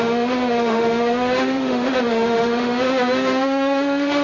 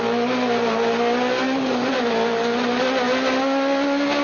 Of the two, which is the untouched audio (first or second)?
second